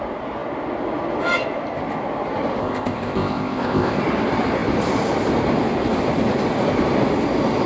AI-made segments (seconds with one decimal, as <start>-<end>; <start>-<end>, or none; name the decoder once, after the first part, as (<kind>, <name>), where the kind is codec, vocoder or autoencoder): 2.6-4.0 (codec, ZipCodec)